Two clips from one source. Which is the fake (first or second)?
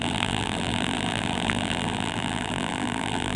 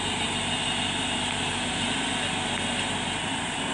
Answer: first